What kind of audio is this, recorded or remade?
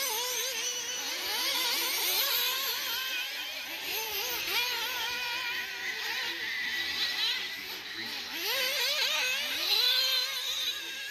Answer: recorded